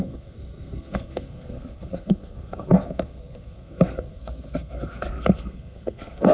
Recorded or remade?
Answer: remade